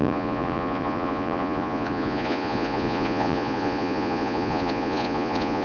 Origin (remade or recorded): remade